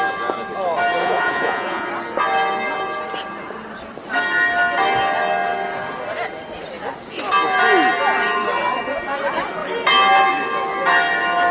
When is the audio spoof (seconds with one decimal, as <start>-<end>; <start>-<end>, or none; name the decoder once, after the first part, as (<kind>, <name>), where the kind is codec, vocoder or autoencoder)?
1.0-1.9 (vocoder, Vocos)

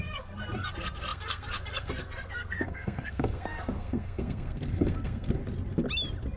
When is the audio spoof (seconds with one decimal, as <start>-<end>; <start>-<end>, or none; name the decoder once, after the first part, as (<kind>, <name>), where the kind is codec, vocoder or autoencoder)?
0.0-5.4 (codec, SNAC)

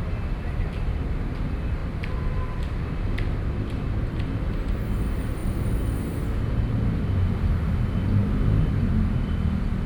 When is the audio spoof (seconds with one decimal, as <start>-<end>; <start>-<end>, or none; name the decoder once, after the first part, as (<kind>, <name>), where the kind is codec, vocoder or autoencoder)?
none